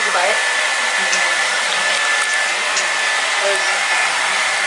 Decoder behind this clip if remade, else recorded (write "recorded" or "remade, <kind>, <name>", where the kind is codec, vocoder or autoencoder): recorded